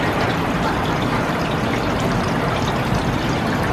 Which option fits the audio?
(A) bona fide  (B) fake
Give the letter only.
B